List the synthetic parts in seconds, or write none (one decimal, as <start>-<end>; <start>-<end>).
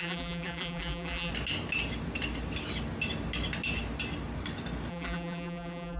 0.0-1.3; 4.9-6.0